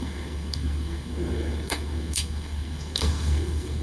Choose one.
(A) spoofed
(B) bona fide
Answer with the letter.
A